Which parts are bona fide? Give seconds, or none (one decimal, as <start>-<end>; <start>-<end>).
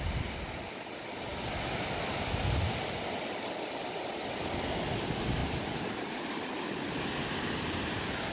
0.0-8.3